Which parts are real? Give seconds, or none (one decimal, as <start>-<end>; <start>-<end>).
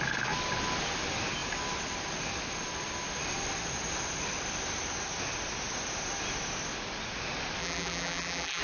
0.0-7.6